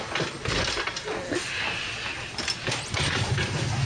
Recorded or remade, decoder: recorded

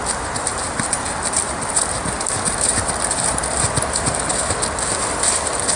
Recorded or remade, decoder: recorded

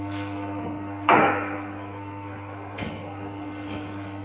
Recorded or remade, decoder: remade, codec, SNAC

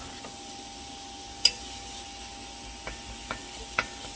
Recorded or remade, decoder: recorded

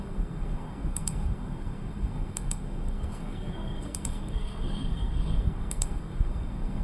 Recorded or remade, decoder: remade, codec, SNAC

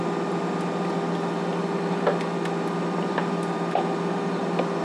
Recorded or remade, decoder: recorded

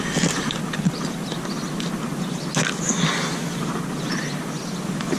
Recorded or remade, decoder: recorded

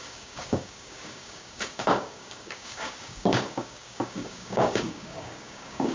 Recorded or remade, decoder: remade, codec, DAC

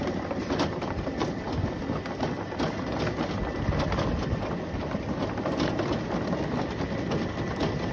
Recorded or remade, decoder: recorded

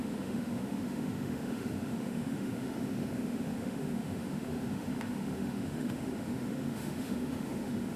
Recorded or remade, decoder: remade, autoencoder, DAC-VAE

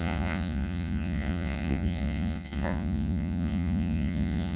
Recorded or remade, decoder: remade, vocoder, Vocos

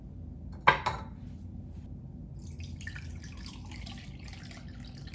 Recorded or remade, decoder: recorded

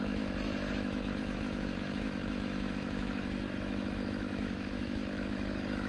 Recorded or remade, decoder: remade, autoencoder, DAC-VAE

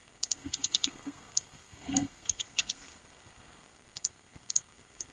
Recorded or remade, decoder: remade, codec, SNAC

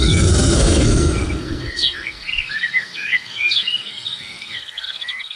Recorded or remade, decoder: remade, codec, SNAC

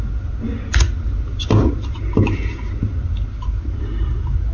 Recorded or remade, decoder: recorded